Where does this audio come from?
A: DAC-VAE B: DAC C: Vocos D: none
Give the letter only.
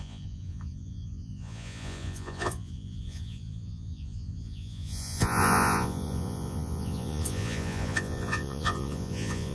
C